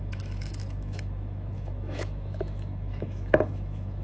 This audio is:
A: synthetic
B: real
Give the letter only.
A